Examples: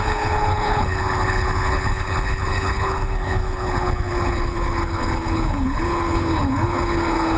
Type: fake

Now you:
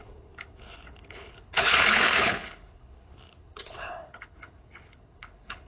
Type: fake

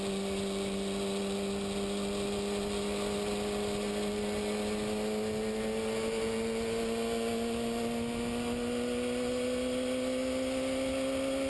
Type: real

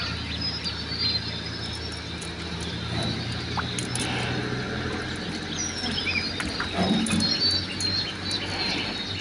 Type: real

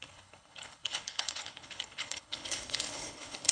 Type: fake